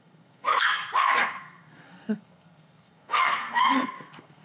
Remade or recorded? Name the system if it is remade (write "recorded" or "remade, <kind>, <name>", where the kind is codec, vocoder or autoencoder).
remade, codec, SNAC